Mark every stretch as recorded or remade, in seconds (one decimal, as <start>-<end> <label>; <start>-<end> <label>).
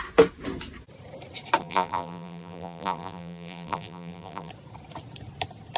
0.0-1.6 recorded; 1.6-4.5 remade; 4.5-5.8 recorded